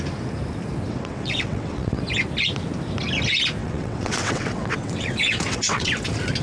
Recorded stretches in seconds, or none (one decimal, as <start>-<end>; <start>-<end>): 0.0-0.9; 2.0-3.6; 5.9-6.4